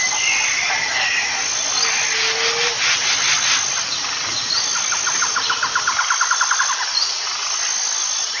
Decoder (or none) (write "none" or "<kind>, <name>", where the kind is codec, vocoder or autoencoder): none